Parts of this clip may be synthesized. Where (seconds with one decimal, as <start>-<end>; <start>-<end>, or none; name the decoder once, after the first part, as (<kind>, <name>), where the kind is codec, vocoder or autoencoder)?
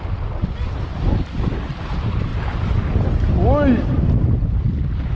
none